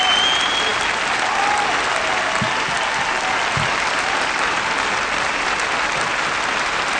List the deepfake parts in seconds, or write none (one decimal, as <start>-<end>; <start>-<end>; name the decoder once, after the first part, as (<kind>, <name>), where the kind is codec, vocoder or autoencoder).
none